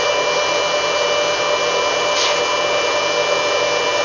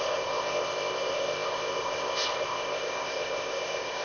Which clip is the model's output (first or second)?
second